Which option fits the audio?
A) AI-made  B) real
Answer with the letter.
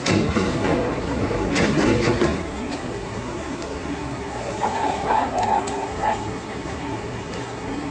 A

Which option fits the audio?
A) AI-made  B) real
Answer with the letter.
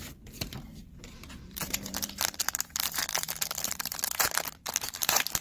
A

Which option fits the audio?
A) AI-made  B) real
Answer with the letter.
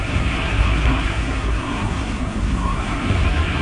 A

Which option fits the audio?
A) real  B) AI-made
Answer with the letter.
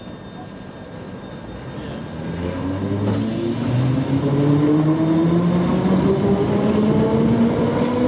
A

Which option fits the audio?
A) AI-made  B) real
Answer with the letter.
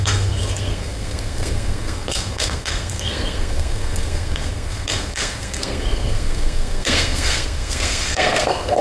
A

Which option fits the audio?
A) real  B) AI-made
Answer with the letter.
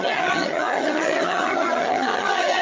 B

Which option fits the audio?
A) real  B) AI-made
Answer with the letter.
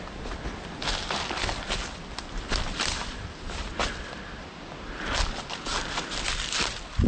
A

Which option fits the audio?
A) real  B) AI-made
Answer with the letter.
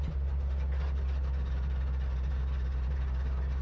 A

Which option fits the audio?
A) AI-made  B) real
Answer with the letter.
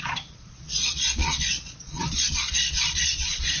A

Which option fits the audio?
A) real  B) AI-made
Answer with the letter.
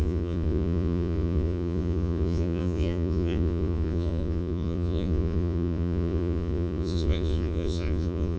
B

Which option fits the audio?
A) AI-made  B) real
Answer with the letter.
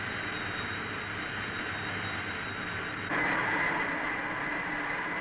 B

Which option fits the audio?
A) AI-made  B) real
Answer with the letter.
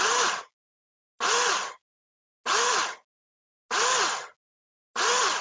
B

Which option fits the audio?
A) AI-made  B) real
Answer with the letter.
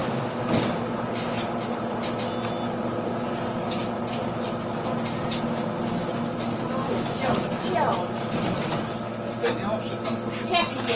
B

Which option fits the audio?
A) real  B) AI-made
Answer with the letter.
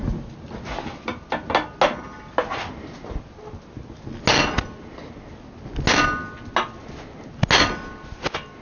A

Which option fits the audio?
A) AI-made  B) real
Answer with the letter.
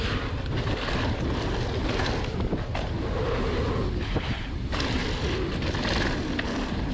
B